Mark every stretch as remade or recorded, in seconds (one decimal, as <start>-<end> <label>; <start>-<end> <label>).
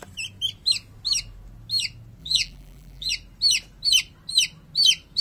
0.0-2.2 recorded; 2.2-3.1 remade; 3.1-5.2 recorded